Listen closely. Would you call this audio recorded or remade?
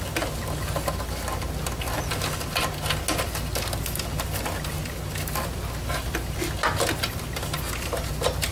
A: recorded